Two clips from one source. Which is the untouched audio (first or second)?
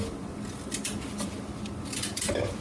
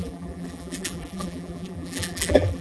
first